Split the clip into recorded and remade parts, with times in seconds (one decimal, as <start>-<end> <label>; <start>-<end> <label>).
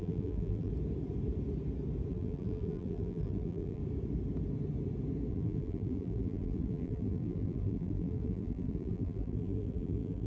0.0-0.7 remade; 0.7-2.1 recorded; 2.1-3.8 remade; 3.8-5.3 recorded; 5.3-10.3 remade